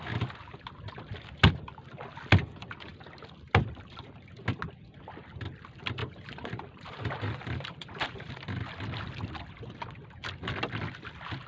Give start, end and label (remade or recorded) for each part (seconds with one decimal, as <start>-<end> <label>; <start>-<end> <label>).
0.0-6.0 recorded; 6.0-8.3 remade; 8.3-11.5 recorded